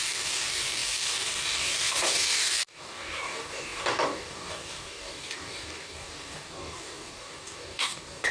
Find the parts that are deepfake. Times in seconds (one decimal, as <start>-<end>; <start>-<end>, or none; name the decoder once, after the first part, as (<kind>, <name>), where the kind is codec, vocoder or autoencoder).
0.0-8.3 (codec, DAC)